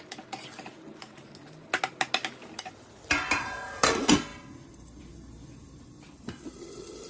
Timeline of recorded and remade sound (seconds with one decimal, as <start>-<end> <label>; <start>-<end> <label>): 0.0-7.1 recorded